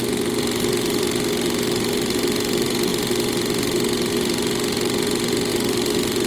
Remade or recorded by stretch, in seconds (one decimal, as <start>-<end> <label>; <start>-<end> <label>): 0.0-6.3 recorded